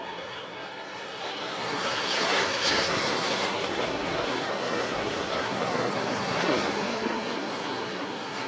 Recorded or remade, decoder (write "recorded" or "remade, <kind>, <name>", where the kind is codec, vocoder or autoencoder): remade, codec, SNAC